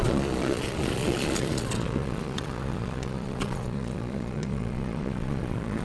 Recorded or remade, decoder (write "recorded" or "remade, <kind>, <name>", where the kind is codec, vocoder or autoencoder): remade, vocoder, Vocos